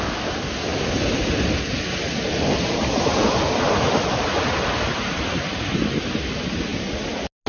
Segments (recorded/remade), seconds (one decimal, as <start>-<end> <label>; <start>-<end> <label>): 0.0-7.5 recorded